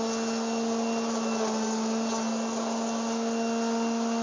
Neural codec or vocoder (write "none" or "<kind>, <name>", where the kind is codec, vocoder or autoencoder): none